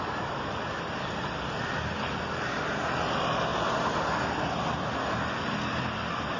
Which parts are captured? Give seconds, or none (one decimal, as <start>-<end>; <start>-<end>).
0.0-6.4